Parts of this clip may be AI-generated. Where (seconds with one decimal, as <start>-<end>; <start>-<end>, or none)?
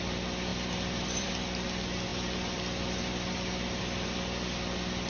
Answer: 0.5-1.3; 2.1-3.8